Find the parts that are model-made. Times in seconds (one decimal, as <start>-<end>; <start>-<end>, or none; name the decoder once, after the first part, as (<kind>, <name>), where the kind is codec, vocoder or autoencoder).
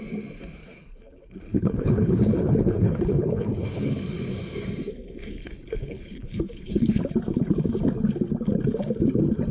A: 0.6-3.9 (codec, HILCodec); 5.4-7.0